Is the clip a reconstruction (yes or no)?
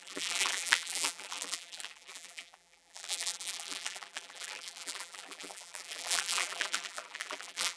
yes